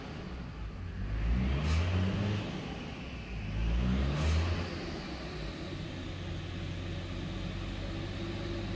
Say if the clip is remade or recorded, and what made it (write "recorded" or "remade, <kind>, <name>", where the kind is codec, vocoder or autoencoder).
recorded